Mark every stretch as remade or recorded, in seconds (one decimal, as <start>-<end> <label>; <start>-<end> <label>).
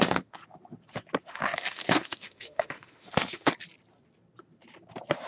0.0-0.4 remade; 0.4-1.3 recorded; 1.3-3.5 remade; 3.5-5.3 recorded